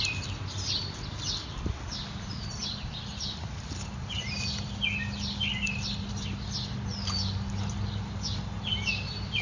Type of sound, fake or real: real